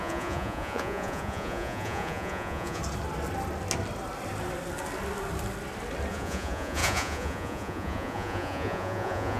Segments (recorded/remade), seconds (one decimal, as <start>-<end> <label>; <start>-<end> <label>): 0.0-2.8 remade; 2.8-6.1 recorded; 6.1-9.4 remade